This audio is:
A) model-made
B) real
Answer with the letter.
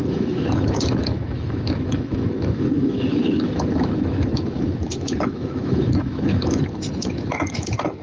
A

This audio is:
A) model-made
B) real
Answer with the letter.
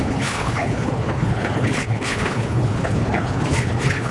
A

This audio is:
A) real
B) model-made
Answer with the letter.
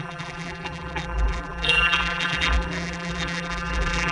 B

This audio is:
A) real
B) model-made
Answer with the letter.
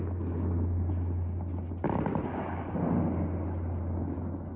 A